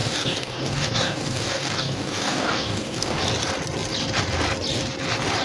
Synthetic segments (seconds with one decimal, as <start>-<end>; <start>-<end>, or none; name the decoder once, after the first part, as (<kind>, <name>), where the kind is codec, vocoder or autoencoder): 0.0-3.2 (codec, DAC)